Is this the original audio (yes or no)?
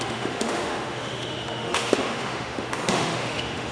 no